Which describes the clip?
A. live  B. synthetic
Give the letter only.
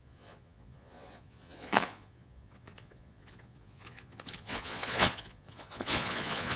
B